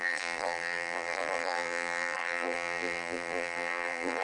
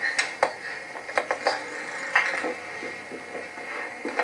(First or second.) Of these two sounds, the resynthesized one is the first